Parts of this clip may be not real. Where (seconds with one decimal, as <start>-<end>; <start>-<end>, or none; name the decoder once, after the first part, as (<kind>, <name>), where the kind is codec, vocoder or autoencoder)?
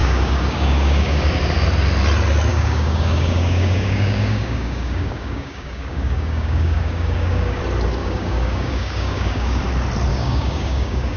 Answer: 0.0-1.3 (codec, DAC); 2.5-7.6; 8.0-9.6; 10.1-11.2